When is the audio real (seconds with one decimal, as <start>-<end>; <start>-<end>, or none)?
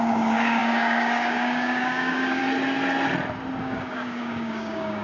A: 2.4-3.6